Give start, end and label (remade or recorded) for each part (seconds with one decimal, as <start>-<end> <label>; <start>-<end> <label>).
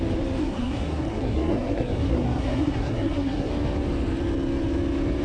0.0-0.4 recorded; 0.4-3.5 remade; 3.5-5.2 recorded